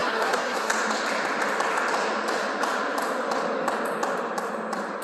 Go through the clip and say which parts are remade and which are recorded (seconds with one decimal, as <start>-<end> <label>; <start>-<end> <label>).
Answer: 0.0-0.7 remade; 0.7-5.0 recorded